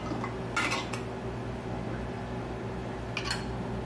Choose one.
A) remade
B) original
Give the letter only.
B